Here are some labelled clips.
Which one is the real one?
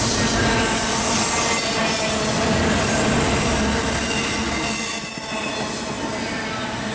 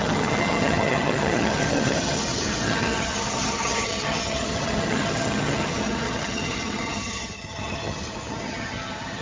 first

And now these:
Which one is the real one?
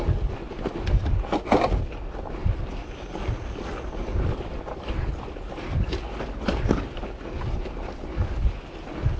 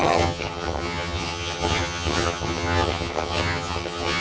first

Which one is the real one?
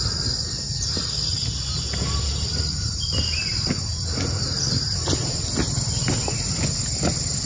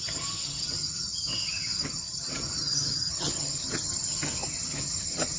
first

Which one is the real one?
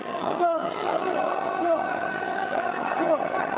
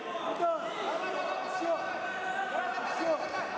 second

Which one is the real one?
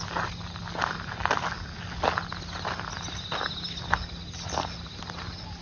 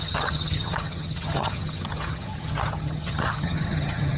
first